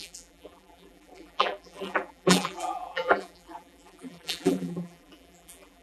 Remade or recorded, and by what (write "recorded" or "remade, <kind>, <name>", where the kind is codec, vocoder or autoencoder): remade, vocoder, BigVGAN v2